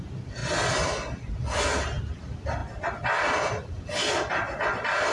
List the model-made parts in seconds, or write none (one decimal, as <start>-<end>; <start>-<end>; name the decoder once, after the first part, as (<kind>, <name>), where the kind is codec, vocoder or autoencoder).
0.0-0.4 (vocoder, BigVGAN v2); 2.0-2.6; 4.3-5.1